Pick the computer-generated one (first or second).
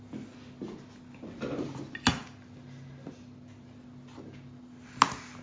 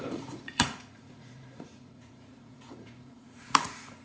second